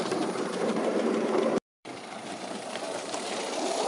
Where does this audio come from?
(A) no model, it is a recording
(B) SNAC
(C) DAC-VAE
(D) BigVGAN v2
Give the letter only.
D